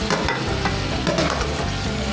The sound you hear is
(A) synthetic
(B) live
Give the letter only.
B